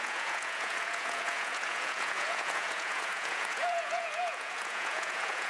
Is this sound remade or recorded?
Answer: remade